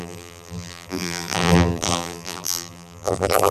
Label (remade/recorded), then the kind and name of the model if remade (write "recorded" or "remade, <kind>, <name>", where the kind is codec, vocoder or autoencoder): remade, vocoder, BigVGAN v2